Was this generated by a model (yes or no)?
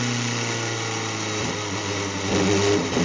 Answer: no